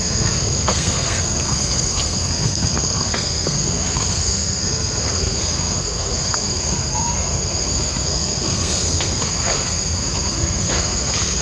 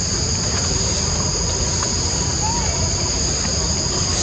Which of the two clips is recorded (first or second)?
second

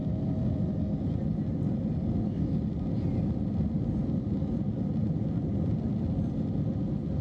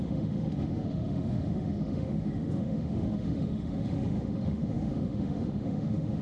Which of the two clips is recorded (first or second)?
first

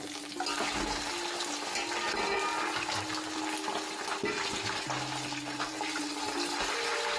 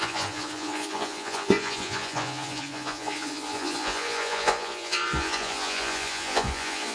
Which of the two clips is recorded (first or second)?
first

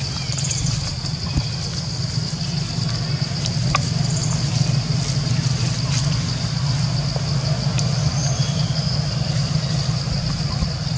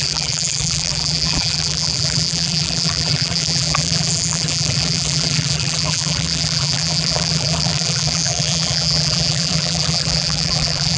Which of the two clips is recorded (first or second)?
first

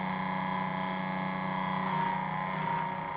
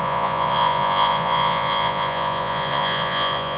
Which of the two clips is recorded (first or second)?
first